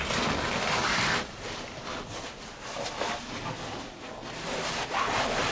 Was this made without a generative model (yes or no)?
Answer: yes